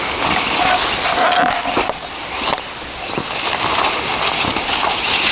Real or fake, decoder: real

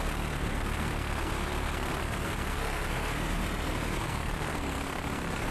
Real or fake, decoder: fake, codec, SNAC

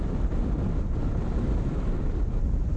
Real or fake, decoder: real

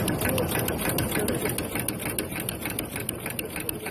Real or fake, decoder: real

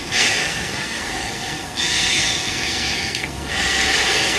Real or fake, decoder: fake, codec, SNAC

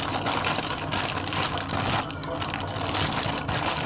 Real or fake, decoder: real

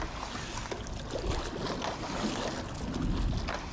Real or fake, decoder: real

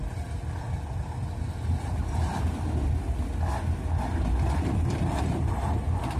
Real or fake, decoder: real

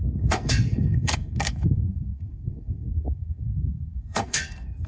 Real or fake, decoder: fake, codec, SNAC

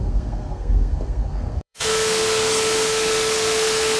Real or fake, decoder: fake, codec, SNAC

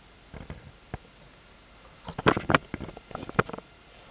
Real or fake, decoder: real